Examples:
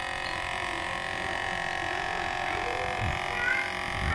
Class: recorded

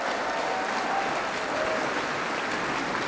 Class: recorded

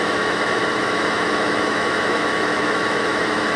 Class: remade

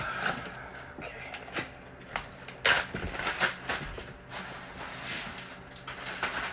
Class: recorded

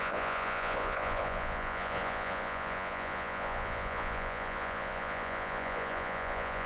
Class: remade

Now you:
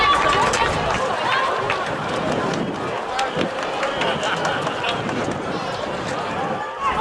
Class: recorded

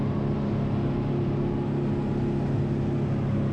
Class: recorded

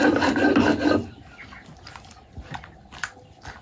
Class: recorded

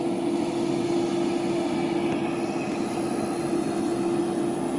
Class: recorded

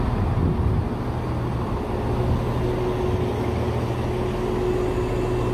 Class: recorded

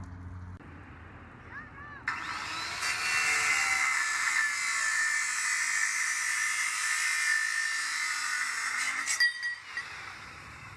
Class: recorded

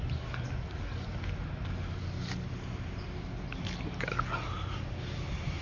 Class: recorded